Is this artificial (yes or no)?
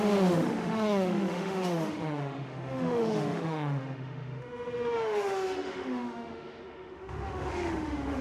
yes